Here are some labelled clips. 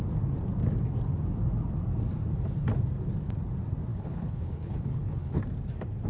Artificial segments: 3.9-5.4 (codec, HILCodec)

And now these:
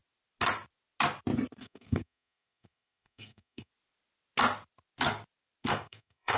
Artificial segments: 1.6-3.7 (codec, SNAC); 5.7-6.4

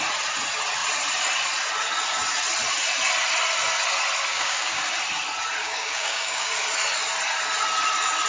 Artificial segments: 4.3-4.8 (codec, DAC); 5.6-6.5

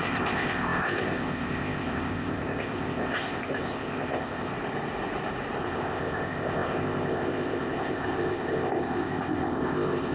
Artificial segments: 0.0-4.5 (codec, ZipCodec); 5.6-10.1